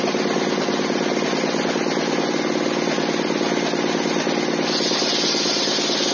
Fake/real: real